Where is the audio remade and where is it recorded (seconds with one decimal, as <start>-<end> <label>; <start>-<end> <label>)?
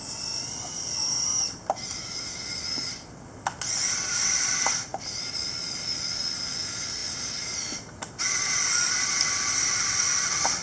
0.0-10.6 recorded